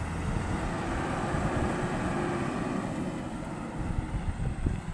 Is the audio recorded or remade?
recorded